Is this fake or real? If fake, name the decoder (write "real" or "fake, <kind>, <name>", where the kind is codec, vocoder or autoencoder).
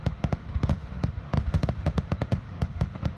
fake, autoencoder, DAC-VAE